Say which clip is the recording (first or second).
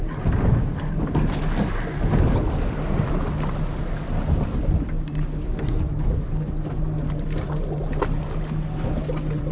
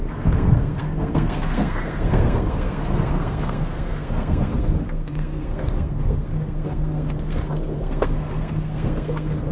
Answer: first